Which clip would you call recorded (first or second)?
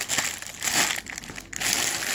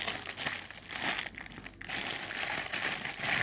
second